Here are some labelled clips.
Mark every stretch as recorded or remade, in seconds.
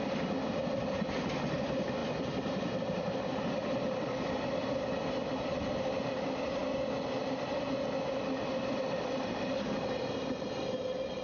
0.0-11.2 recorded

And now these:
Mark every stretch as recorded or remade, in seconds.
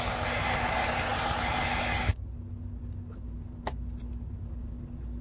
0.0-5.2 recorded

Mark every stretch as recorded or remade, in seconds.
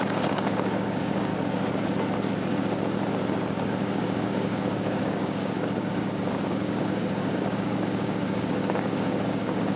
0.0-1.3 remade; 1.3-3.6 recorded; 3.6-9.8 remade